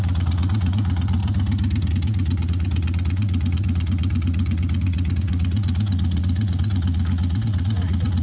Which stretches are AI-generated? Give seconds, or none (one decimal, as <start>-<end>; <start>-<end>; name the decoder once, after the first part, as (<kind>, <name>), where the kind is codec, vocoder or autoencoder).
0.0-1.2 (vocoder, Vocos); 1.9-8.2